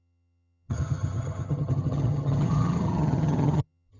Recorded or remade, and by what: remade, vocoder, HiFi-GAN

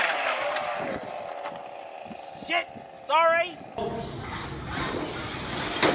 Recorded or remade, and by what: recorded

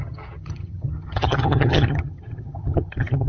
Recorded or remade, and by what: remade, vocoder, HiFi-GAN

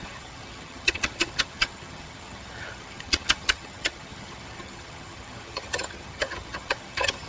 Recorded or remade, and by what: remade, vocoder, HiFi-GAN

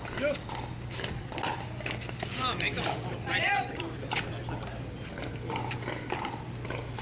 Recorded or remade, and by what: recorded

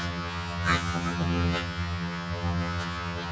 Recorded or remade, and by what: remade, vocoder, HiFi-GAN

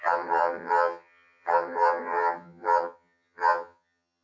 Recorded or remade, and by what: remade, vocoder, HiFi-GAN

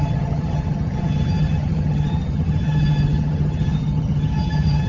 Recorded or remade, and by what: remade, vocoder, HiFi-GAN